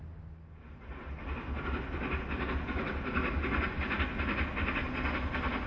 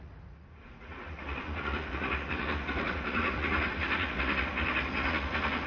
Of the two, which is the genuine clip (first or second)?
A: first